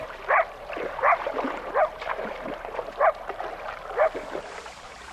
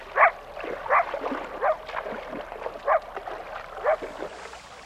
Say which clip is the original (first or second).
second